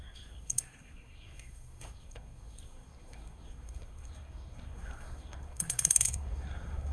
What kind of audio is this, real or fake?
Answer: fake